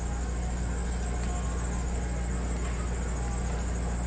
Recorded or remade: recorded